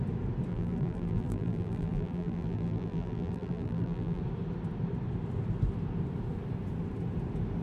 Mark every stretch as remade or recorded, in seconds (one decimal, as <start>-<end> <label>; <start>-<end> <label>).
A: 0.0-0.5 recorded; 0.5-4.2 remade; 4.2-7.6 recorded

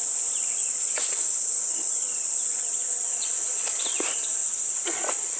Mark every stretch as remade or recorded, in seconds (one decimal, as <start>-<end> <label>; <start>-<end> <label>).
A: 0.0-0.6 recorded; 0.6-3.8 remade; 3.8-4.4 recorded; 4.4-5.4 remade

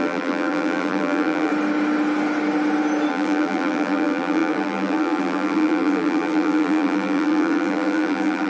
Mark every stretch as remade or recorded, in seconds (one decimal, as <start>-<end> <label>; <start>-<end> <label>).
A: 0.0-1.5 remade; 1.5-3.1 recorded; 3.1-8.5 remade